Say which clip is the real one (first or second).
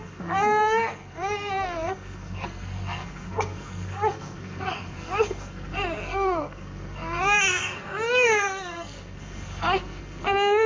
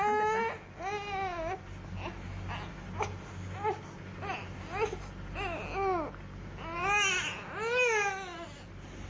second